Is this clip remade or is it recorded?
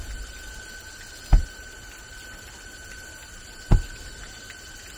recorded